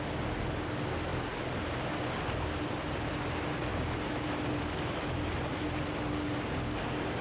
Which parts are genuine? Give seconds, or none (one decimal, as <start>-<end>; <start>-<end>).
0.0-7.2